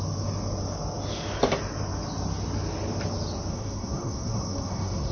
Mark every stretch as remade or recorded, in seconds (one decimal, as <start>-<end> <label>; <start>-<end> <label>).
0.0-3.5 recorded; 3.5-5.1 remade